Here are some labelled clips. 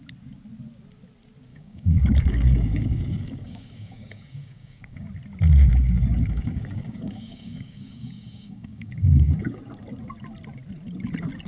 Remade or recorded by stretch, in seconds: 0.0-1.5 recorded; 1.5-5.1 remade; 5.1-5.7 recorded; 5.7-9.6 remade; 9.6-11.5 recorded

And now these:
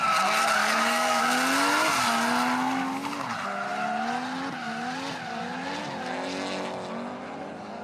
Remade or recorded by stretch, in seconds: 0.0-0.6 recorded; 0.6-1.2 remade; 1.2-7.8 recorded